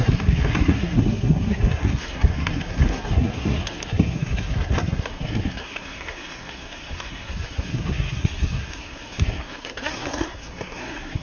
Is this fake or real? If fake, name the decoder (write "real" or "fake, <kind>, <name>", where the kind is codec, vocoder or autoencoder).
fake, codec, SNAC